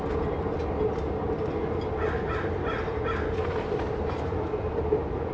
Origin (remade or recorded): recorded